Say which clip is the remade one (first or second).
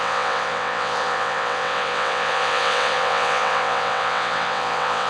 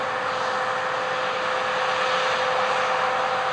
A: first